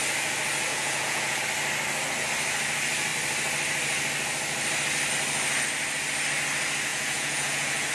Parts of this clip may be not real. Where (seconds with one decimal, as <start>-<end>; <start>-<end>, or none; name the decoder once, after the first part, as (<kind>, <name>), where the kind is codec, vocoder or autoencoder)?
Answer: 0.7-1.4 (vocoder, Vocos); 6.9-7.9